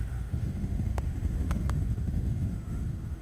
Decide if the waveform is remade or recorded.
remade